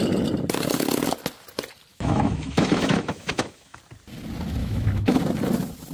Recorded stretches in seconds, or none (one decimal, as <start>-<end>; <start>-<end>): 0.0-1.9; 3.8-4.6; 5.2-5.9